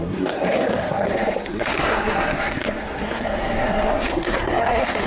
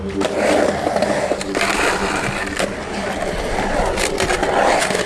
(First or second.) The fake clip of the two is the first